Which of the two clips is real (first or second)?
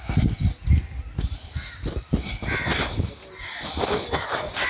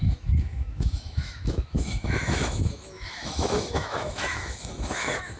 first